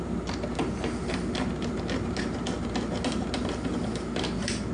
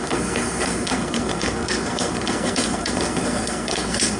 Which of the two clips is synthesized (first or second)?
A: second